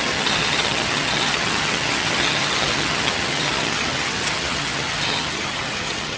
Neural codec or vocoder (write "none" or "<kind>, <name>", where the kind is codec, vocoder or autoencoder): vocoder, HiFi-GAN